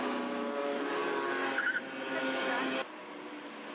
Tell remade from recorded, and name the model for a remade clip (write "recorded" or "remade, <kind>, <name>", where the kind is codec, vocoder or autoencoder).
recorded